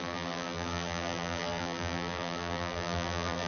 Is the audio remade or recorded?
remade